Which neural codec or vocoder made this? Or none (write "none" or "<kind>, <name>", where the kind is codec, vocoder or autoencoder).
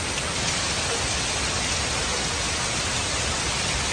none